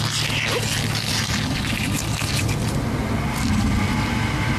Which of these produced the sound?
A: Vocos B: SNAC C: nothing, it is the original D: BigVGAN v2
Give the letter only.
C